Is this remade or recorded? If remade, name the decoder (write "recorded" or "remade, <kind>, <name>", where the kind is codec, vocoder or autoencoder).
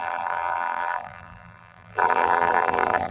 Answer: remade, vocoder, BigVGAN v2